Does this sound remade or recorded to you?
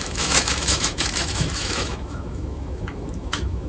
remade